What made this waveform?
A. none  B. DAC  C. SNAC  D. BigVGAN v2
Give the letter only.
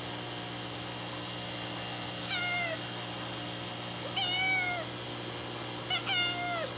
A